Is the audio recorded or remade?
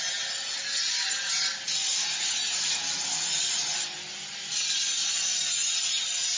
recorded